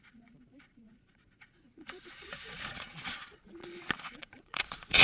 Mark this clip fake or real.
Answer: fake